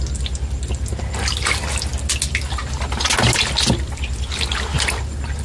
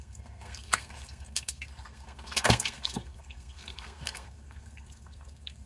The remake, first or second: second